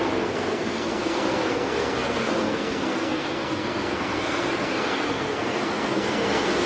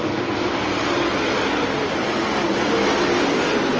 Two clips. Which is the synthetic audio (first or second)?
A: first